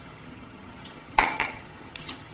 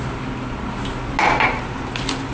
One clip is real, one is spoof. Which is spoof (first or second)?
first